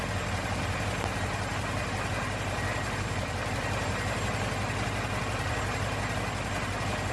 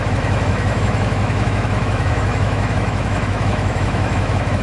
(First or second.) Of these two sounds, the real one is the first